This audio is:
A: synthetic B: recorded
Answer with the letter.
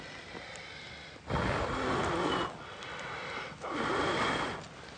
B